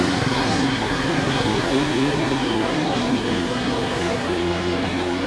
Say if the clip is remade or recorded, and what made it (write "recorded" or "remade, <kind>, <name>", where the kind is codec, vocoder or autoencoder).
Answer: remade, codec, SNAC